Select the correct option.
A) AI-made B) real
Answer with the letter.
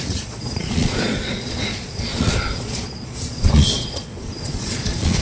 A